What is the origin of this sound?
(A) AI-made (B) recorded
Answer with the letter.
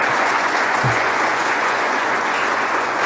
A